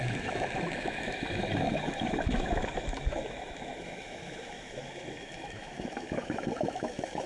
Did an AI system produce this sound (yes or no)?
yes